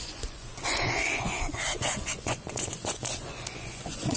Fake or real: fake